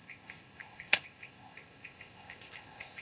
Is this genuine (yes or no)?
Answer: no